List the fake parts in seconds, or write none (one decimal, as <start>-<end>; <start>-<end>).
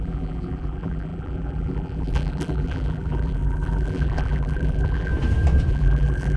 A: 0.0-5.1; 5.7-6.4